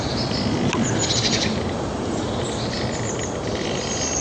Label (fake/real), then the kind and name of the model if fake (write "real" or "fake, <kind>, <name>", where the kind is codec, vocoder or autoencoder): real